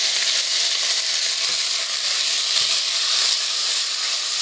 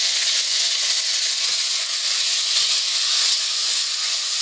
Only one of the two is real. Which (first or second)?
first